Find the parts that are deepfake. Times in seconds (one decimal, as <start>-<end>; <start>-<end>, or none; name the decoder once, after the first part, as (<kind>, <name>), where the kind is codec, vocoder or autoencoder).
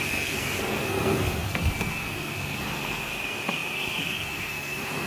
0.0-5.1 (codec, SNAC)